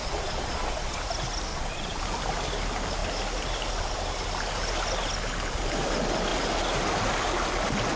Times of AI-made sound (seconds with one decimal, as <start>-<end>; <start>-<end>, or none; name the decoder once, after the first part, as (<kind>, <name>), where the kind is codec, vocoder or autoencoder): 0.0-1.0 (vocoder, Vocos); 1.5-2.0